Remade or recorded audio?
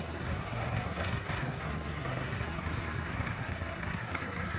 remade